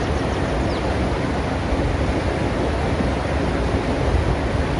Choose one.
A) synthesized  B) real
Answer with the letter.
B